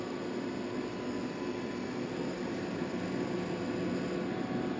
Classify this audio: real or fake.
real